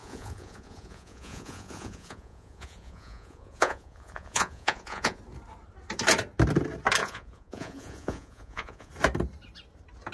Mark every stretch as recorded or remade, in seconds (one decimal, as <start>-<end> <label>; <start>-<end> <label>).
0.0-5.2 remade; 5.2-7.0 recorded; 7.0-8.9 remade; 8.9-10.1 recorded